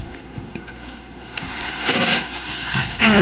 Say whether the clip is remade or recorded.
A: remade